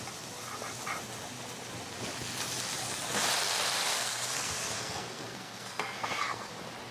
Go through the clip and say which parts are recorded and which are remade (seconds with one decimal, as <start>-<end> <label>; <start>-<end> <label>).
0.0-3.9 recorded; 3.9-6.5 remade; 6.5-6.9 recorded